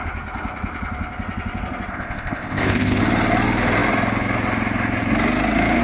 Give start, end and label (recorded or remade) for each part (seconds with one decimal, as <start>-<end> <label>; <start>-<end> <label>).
0.0-1.9 recorded; 1.9-3.0 remade; 3.0-5.8 recorded